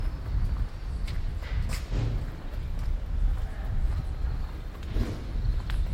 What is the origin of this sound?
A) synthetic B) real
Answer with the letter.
B